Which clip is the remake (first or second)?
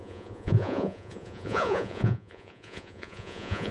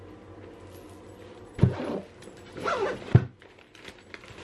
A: first